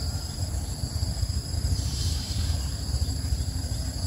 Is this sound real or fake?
fake